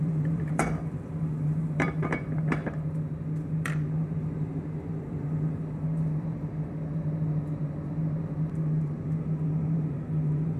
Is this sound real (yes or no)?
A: no